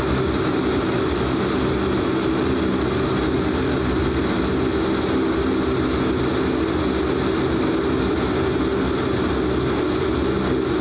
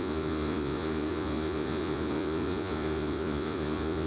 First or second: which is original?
first